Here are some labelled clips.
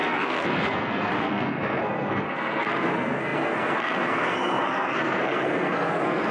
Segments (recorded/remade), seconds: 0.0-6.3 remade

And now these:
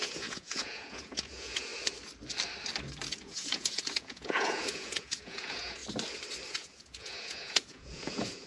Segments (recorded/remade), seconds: 0.0-1.7 remade; 1.7-3.2 recorded; 3.2-5.8 remade; 5.8-6.5 recorded; 6.5-8.5 remade

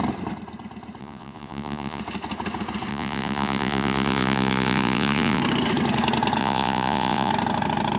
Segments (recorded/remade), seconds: 0.0-1.0 recorded; 1.0-2.0 remade; 2.0-2.9 recorded; 2.9-5.4 remade; 5.4-6.4 recorded; 6.4-7.3 remade; 7.3-8.0 recorded

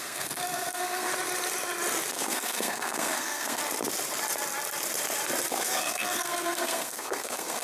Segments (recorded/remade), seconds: 0.0-1.1 remade; 1.1-2.1 recorded; 2.1-3.6 remade; 3.6-5.5 recorded; 5.5-7.6 remade

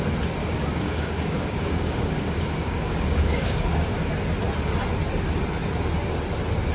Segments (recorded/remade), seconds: 0.0-0.4 recorded; 0.4-4.1 remade; 4.1-6.7 recorded

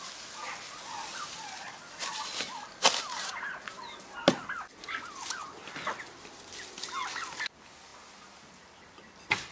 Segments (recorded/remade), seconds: 0.0-9.5 recorded

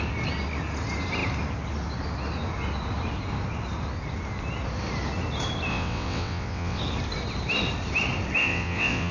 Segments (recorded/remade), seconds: 0.0-5.7 recorded; 5.7-6.8 remade; 6.8-8.4 recorded; 8.4-9.1 remade

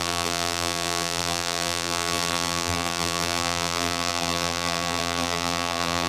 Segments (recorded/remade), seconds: 0.0-6.1 remade